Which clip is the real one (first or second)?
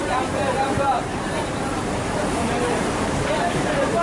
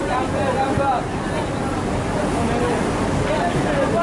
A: second